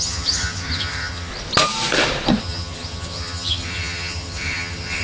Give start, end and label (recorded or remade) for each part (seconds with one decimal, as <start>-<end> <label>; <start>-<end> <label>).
0.0-1.3 remade; 1.3-2.4 recorded; 2.4-5.0 remade